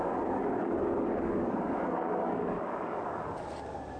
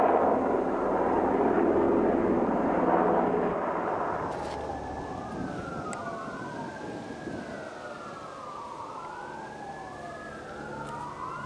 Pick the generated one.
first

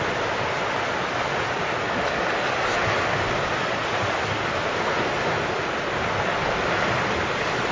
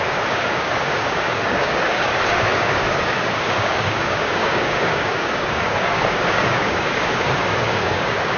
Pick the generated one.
second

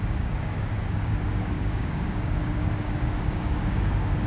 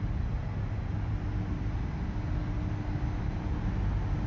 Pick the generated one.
first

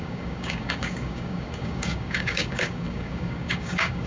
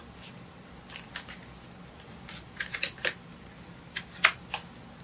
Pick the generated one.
first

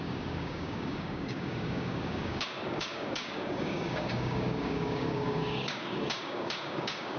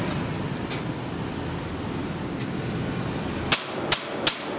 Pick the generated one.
first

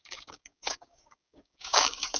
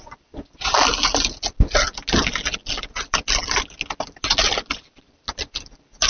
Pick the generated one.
first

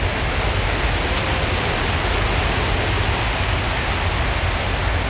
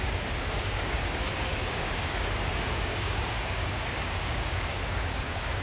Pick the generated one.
second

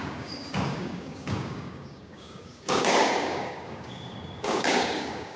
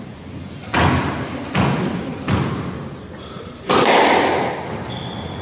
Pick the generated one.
first